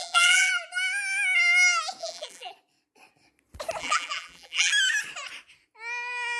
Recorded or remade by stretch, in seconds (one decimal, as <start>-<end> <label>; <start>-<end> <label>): 0.0-0.5 remade; 0.5-2.0 recorded; 2.0-2.5 remade; 2.5-3.8 recorded; 3.8-4.7 remade; 4.7-6.4 recorded